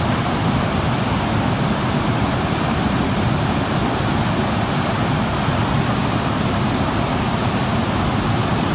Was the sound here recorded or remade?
recorded